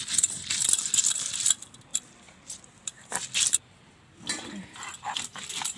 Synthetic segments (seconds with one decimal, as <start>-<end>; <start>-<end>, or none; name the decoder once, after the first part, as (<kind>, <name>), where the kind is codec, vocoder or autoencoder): 1.9-5.8 (vocoder, BigVGAN v2)